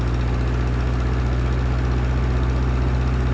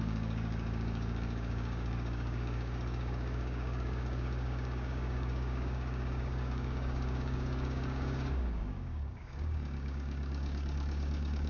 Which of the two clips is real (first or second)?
first